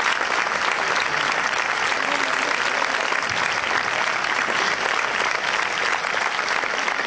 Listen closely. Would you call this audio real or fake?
real